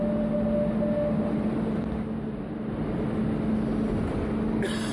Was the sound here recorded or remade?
recorded